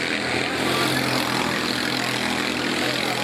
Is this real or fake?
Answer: real